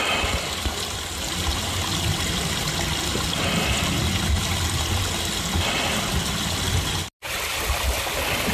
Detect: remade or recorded recorded